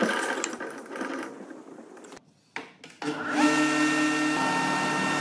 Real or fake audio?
real